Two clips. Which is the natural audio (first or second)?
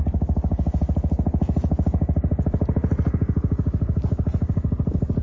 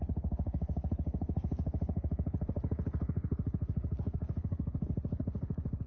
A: first